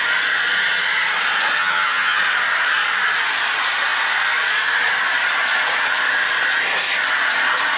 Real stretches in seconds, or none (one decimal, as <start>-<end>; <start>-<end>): 0.0-1.6; 2.2-7.8